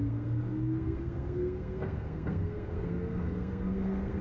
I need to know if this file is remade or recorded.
remade